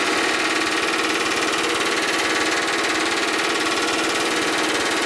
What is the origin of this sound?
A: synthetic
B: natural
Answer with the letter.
B